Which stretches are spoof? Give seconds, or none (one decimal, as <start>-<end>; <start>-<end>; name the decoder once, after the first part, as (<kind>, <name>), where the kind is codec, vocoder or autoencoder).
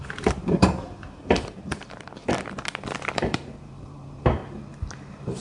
0.0-2.2 (vocoder, BigVGAN v2); 3.1-4.4; 5.0-5.4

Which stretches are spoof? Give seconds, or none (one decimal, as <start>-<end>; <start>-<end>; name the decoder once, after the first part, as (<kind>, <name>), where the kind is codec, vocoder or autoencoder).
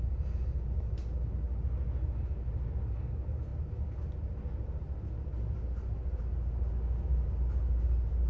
none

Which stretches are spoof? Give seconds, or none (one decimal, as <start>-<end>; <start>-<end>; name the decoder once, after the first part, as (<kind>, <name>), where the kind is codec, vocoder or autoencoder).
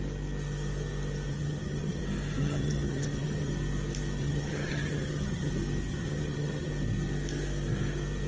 1.3-2.0 (vocoder, HiFi-GAN); 2.4-3.5; 4.2-5.5; 5.9-6.7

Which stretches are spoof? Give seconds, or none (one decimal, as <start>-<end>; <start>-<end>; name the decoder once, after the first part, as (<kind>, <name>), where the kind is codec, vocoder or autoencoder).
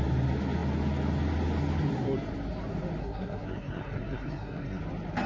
3.0-4.8 (codec, SNAC)